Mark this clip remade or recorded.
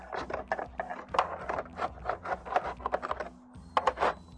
recorded